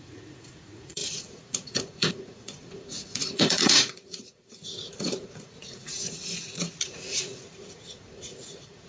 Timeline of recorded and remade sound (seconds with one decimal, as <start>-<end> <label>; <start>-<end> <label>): 0.0-8.9 remade